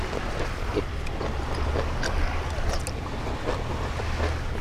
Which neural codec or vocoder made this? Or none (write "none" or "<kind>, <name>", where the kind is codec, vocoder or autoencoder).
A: none